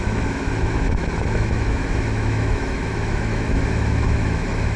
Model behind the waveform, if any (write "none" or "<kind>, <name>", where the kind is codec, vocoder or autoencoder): autoencoder, DAC-VAE